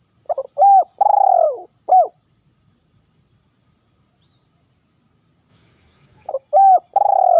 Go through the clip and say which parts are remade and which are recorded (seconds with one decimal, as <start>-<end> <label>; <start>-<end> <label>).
0.0-5.5 recorded; 5.5-6.3 remade; 6.3-7.4 recorded